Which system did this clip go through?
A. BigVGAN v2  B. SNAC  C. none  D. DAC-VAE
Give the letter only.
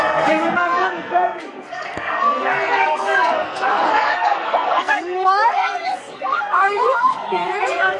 B